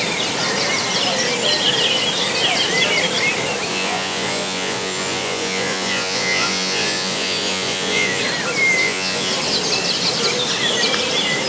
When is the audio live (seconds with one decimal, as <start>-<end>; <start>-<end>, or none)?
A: 0.0-3.7; 8.2-8.8; 9.3-11.5